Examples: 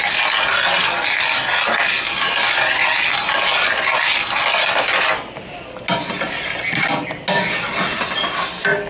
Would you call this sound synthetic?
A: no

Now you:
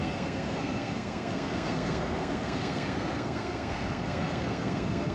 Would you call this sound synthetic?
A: yes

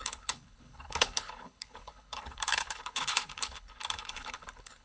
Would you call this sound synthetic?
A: yes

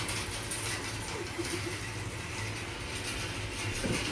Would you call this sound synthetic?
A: no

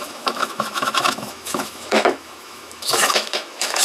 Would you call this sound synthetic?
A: yes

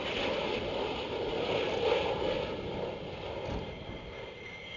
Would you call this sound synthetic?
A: no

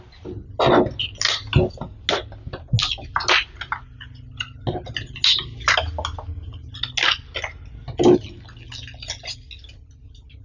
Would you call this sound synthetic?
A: no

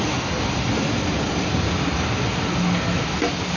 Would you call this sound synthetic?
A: no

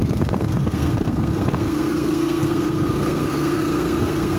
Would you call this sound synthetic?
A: yes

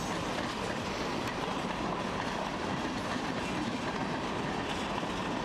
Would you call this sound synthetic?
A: no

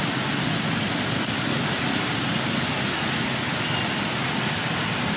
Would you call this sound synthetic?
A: no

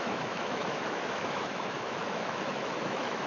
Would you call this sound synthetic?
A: yes